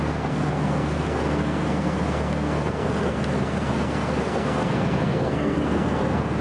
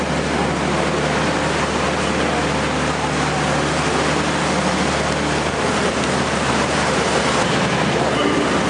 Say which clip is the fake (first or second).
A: first